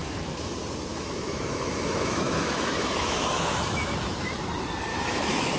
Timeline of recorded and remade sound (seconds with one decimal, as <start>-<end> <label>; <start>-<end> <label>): 0.0-0.5 remade; 0.5-0.9 recorded; 0.9-4.3 remade; 4.3-4.9 recorded; 4.9-5.6 remade